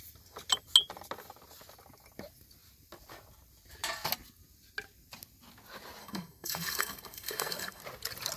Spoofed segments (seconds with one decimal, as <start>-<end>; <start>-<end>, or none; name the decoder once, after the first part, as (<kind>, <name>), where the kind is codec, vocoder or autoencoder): 6.0-7.8 (codec, SNAC)